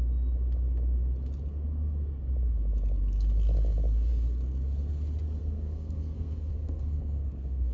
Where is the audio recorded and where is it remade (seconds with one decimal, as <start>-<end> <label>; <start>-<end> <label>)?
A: 0.0-5.4 recorded; 5.4-7.7 remade